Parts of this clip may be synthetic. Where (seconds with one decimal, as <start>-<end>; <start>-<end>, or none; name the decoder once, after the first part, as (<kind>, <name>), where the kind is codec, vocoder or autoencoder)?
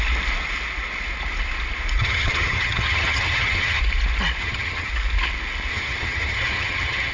2.0-3.8 (vocoder, HiFi-GAN); 4.4-4.9; 5.7-7.1